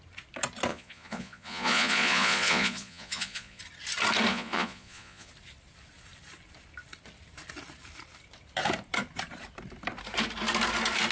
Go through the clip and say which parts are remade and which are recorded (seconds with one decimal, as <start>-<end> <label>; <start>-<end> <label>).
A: 0.0-0.7 recorded; 0.7-3.6 remade; 3.6-4.3 recorded; 4.3-5.3 remade; 5.3-11.1 recorded